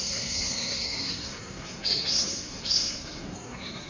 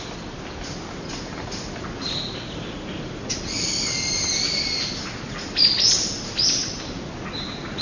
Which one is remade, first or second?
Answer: first